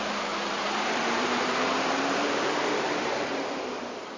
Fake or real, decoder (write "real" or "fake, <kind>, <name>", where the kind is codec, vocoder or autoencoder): fake, vocoder, BigVGAN v2